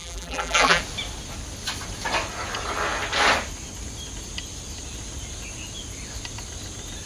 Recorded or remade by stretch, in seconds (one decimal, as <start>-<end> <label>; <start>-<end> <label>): 0.0-0.8 remade; 0.8-7.1 recorded